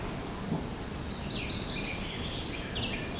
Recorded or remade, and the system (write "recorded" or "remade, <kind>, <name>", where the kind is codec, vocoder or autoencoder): recorded